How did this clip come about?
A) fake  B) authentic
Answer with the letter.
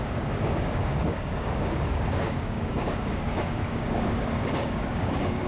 A